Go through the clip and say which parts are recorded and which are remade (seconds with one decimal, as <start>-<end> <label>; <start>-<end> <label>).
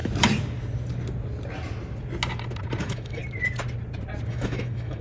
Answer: 0.0-2.8 recorded; 2.8-3.2 remade; 3.2-4.3 recorded; 4.3-5.0 remade